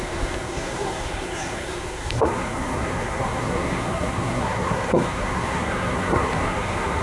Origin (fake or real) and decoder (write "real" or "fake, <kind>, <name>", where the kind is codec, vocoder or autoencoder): fake, codec, SNAC